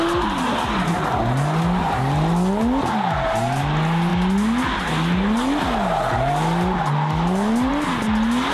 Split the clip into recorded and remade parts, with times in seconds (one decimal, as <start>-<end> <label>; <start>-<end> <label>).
0.0-8.5 recorded